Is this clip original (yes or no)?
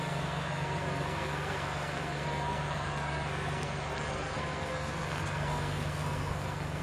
no